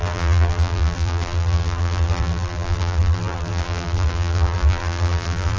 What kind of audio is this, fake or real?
fake